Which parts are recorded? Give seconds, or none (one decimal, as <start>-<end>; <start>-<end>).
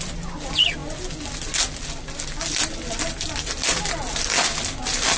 0.0-5.2